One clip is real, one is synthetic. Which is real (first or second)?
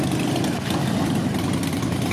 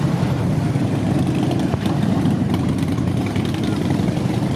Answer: first